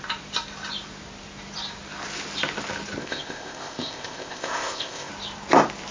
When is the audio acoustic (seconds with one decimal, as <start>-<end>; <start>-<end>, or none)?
0.0-3.0; 5.1-5.9

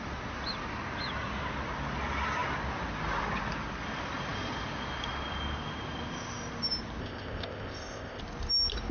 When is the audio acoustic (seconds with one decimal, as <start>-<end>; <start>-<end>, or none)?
0.0-7.0; 8.2-8.9

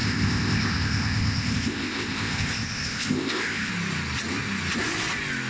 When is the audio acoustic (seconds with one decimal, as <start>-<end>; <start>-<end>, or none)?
3.7-5.5

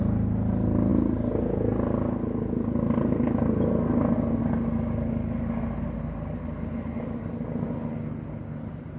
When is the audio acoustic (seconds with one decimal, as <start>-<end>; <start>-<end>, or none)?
0.0-9.0

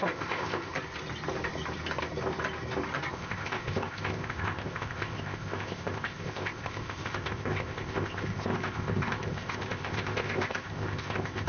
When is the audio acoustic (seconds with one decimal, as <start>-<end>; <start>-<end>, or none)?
0.7-3.1

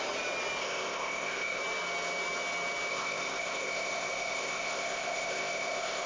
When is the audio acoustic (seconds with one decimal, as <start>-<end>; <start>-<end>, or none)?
0.0-0.6; 1.6-2.9

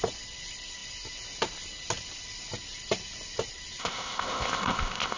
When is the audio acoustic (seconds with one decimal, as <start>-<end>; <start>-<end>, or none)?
0.0-3.8